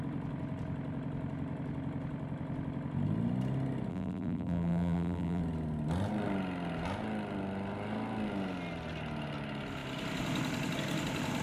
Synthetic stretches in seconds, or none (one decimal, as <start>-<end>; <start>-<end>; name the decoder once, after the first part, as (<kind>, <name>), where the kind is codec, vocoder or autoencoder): 3.9-5.4 (vocoder, BigVGAN v2)